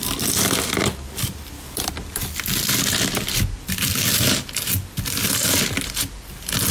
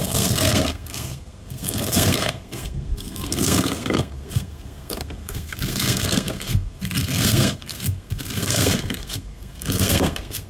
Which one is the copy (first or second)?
second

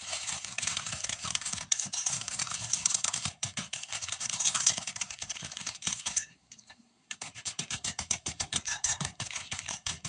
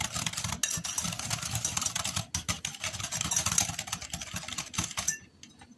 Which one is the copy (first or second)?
first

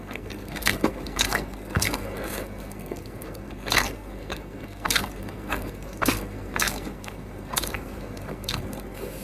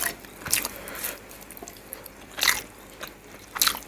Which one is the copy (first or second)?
first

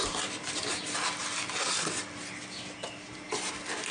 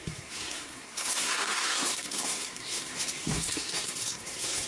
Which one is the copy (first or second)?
second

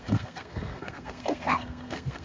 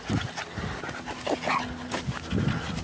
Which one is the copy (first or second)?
first